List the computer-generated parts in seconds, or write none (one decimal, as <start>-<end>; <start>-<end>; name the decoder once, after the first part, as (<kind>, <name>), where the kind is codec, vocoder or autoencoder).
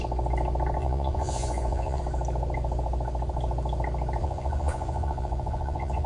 0.8-2.0 (vocoder, Vocos); 4.2-6.1